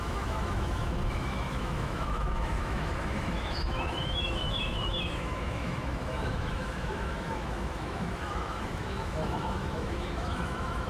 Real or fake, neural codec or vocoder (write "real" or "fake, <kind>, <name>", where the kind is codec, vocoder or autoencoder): fake, autoencoder, DAC-VAE